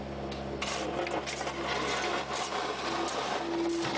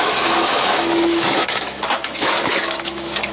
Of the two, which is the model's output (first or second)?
second